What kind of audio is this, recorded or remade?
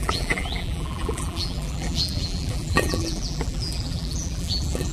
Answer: remade